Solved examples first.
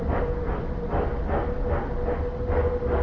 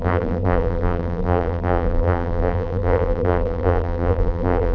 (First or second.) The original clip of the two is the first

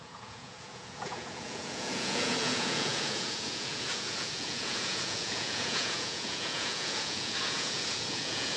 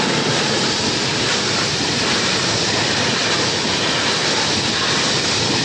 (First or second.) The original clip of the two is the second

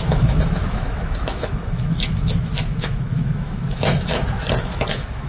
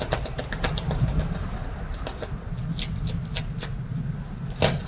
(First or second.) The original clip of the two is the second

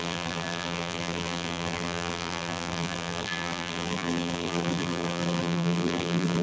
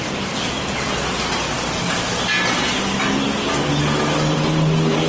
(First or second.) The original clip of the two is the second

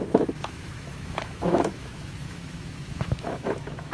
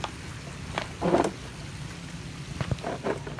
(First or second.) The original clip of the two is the second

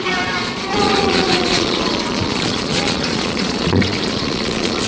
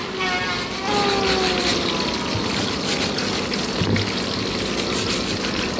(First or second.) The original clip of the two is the second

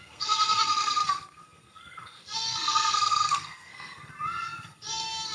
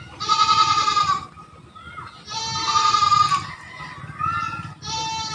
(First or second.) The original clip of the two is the second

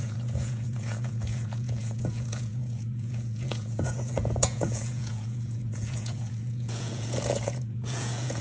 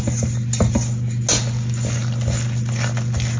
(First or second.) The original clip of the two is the second